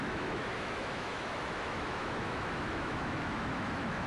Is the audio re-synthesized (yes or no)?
yes